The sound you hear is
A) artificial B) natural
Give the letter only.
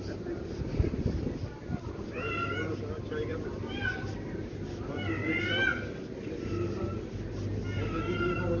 B